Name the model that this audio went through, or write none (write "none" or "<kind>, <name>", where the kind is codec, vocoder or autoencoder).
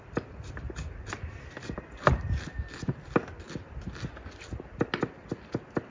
none